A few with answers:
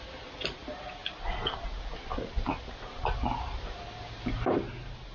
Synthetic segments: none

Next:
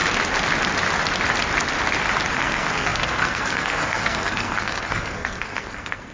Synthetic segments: 2.3-6.1 (codec, SNAC)